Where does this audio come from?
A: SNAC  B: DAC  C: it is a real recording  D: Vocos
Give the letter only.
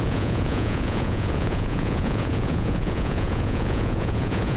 D